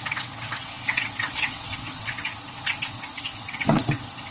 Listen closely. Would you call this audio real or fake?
fake